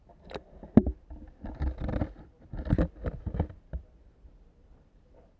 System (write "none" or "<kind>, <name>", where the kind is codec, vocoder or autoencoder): vocoder, BigVGAN v2